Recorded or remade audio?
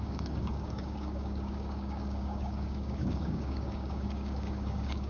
remade